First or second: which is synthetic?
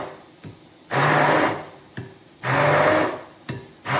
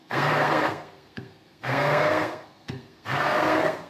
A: second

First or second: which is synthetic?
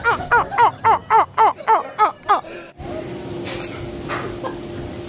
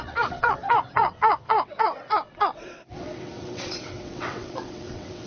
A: second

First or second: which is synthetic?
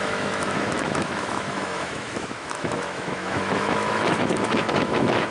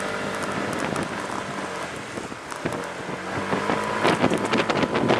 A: first